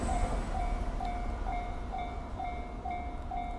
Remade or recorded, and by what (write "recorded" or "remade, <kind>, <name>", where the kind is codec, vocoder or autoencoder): recorded